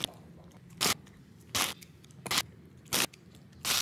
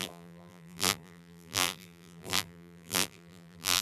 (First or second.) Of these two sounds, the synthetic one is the second